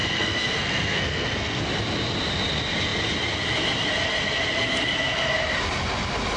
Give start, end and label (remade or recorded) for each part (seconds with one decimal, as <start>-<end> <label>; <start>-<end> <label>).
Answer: 0.0-1.6 remade; 1.6-6.4 recorded